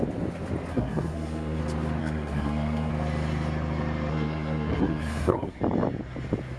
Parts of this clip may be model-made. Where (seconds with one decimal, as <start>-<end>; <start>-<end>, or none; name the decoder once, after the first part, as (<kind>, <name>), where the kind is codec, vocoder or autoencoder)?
0.7-1.6 (codec, SNAC); 2.0-2.9; 4.1-5.6